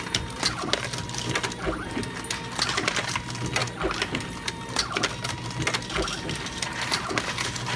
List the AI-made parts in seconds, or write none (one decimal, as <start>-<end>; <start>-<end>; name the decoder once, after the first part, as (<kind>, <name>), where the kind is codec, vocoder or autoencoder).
none